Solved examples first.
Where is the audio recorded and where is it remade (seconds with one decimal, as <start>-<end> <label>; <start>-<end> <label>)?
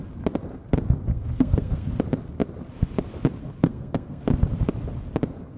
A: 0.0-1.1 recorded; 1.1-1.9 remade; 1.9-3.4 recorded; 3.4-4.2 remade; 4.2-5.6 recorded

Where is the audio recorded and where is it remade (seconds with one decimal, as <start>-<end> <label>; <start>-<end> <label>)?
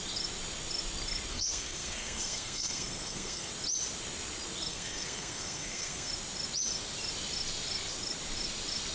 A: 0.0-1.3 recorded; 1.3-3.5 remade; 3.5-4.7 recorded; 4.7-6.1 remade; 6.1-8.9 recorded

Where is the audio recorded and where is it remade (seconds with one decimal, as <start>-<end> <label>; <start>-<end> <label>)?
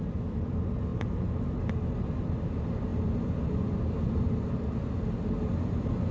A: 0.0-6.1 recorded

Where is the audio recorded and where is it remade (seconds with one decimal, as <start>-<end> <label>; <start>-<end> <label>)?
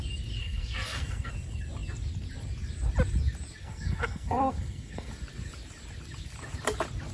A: 0.0-0.4 recorded; 0.4-1.3 remade; 1.3-3.6 recorded; 3.6-5.1 remade; 5.1-7.1 recorded